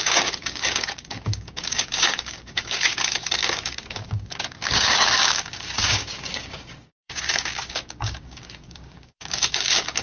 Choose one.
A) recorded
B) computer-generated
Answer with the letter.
B